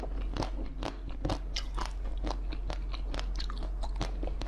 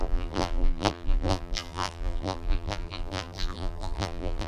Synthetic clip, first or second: second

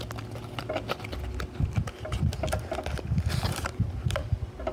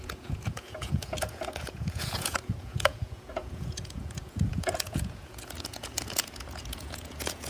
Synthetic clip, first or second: second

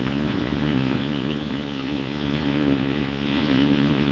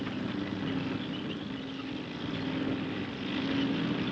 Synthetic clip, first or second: first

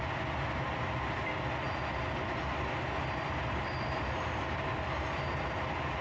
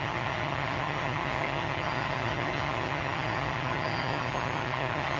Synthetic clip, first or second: second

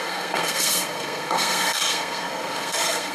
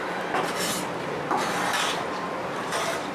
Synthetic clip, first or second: first